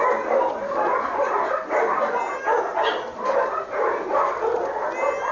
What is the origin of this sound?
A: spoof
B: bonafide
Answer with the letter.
B